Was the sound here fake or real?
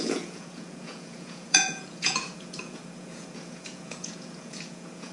fake